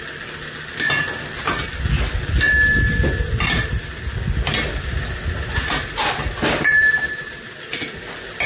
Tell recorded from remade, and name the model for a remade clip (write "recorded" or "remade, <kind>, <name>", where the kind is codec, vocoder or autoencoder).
recorded